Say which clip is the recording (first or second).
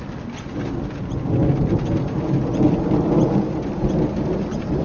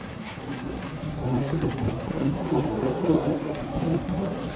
first